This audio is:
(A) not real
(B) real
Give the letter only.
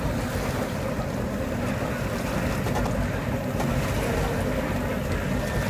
B